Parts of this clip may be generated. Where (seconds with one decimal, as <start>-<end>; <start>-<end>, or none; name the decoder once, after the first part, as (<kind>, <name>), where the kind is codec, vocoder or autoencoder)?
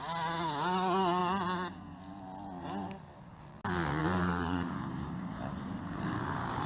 4.0-6.7 (vocoder, BigVGAN v2)